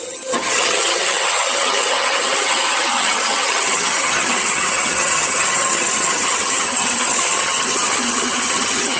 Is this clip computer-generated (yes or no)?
yes